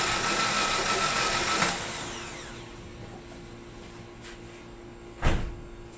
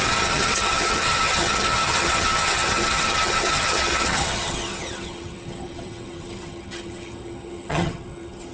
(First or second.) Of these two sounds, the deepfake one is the second